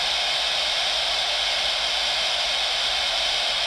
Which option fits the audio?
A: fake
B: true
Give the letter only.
B